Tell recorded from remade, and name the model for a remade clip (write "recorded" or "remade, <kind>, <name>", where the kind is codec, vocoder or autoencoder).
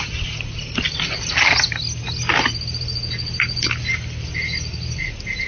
recorded